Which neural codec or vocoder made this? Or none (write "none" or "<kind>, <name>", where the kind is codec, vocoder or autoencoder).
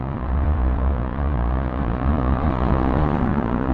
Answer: vocoder, Vocos